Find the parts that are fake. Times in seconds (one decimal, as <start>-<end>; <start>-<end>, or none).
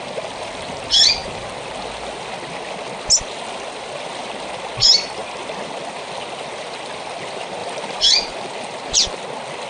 none